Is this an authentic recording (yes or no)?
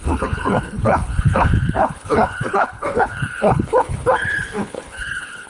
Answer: no